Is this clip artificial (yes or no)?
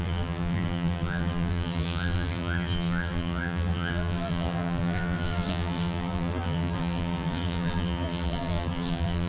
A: yes